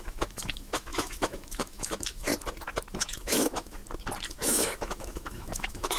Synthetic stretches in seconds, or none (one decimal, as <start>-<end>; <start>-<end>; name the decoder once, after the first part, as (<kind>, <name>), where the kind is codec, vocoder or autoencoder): 0.0-2.3 (autoencoder, DAC-VAE); 2.9-3.8; 4.3-6.0